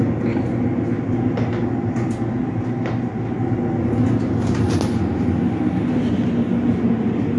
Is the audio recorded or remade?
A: recorded